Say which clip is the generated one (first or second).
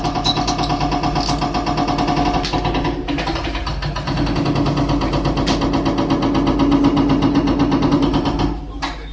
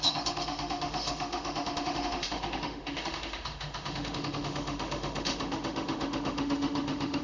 second